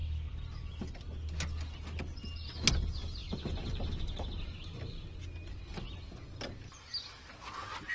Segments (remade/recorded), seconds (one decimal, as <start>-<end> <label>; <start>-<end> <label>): 0.0-7.9 recorded